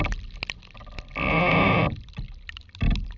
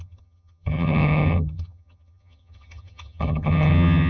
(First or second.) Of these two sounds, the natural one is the first